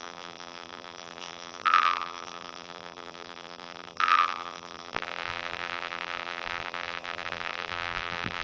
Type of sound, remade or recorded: remade